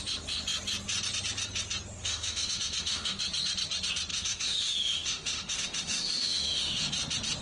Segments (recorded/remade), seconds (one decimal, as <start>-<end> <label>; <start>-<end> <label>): 0.0-2.0 recorded; 2.0-3.2 remade; 3.2-4.1 recorded; 4.1-6.9 remade; 6.9-7.4 recorded